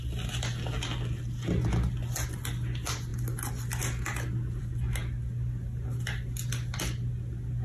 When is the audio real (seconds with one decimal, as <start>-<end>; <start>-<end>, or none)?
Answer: 0.0-7.6